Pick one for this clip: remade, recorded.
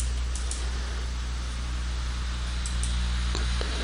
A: recorded